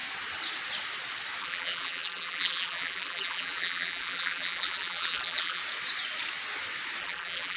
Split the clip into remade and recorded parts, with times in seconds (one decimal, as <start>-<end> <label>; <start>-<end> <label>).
0.0-1.4 recorded; 1.4-5.6 remade; 5.6-7.0 recorded; 7.0-7.6 remade